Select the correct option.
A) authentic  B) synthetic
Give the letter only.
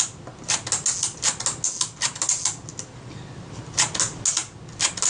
A